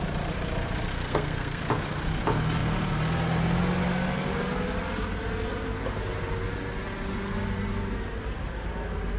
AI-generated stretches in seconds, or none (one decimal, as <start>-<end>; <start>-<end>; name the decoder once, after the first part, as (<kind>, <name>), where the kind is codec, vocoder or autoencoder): 0.9-1.6 (codec, SNAC)